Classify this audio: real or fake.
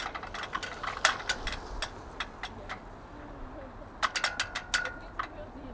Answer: real